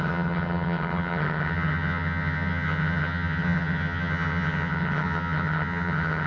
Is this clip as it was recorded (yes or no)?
no